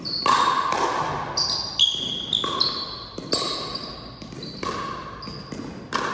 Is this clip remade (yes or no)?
no